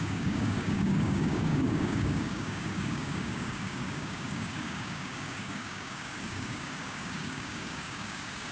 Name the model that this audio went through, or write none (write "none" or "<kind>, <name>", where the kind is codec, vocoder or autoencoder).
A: codec, DAC